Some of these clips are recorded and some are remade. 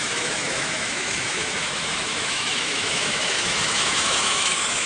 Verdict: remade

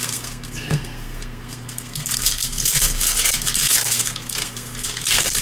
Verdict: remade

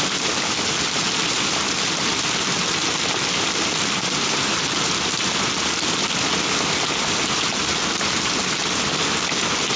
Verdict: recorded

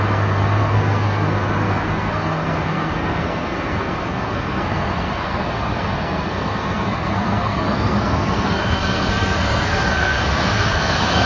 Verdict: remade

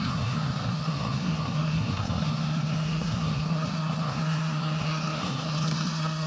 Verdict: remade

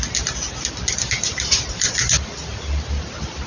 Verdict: recorded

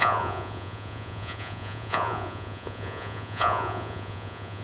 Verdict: remade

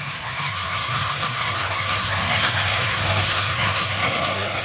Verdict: remade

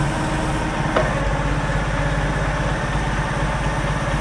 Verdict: recorded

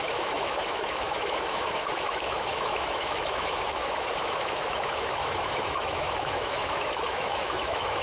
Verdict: remade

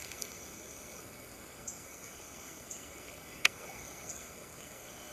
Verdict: remade